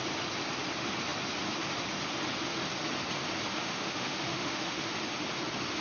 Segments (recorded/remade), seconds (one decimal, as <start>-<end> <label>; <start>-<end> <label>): 0.0-3.5 recorded; 3.5-4.9 remade; 4.9-5.8 recorded